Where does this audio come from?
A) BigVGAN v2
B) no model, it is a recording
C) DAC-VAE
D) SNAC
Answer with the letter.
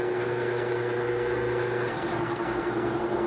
D